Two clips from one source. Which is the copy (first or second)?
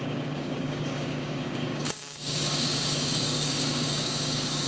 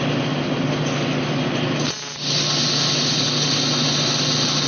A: first